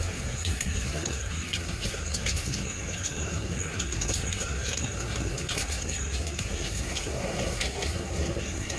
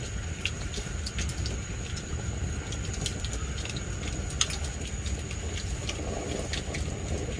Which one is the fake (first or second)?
first